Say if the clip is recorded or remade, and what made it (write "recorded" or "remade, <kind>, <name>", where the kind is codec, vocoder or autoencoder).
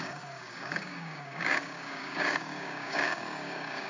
remade, codec, DAC